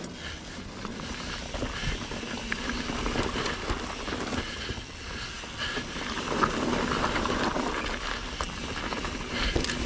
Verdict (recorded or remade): recorded